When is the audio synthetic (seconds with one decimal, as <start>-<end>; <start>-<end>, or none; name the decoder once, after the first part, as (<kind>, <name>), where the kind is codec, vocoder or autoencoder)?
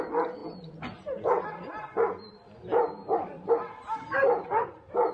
4.2-5.1 (vocoder, BigVGAN v2)